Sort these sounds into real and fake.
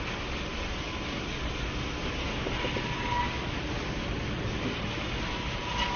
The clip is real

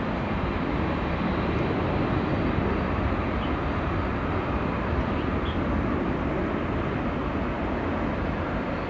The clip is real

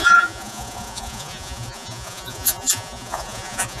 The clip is fake